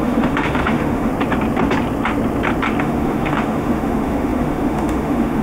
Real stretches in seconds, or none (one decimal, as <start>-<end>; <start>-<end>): 1.1-2.8